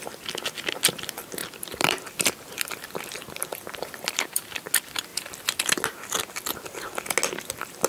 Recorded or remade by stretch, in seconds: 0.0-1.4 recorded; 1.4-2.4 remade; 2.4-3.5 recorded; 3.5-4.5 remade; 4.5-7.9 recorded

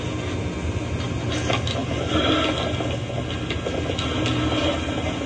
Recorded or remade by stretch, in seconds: 0.0-1.8 recorded; 1.8-2.3 remade; 2.3-5.3 recorded

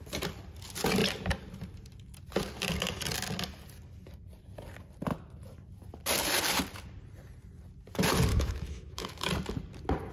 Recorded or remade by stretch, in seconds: 0.0-8.3 recorded; 8.3-9.3 remade; 9.3-10.1 recorded